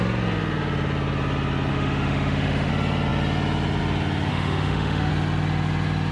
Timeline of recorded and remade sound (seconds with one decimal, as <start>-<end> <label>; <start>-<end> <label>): 0.0-1.7 recorded; 1.7-2.7 remade; 2.7-4.3 recorded; 4.3-5.1 remade; 5.1-6.1 recorded